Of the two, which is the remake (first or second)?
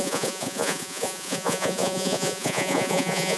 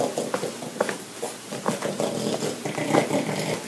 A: first